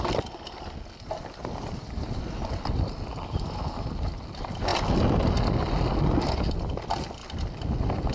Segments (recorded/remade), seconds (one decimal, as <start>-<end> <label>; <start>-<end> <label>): 0.0-8.1 recorded